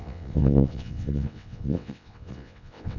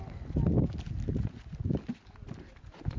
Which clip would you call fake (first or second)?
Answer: first